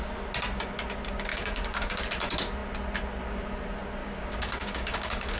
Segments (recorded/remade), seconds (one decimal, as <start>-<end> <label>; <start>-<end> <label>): 0.0-1.3 recorded; 1.3-2.1 remade; 2.1-4.0 recorded; 4.0-5.4 remade